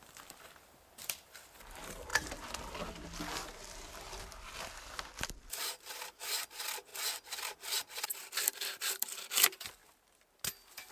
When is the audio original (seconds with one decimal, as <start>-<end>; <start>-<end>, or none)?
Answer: 2.1-5.4; 6.9-7.8; 9.8-10.9